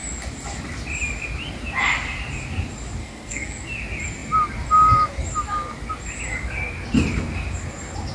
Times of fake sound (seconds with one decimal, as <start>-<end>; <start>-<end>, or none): 3.0-3.6